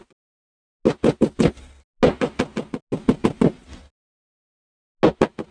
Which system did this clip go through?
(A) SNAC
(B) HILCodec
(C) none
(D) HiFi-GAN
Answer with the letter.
C